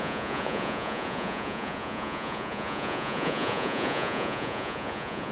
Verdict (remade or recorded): remade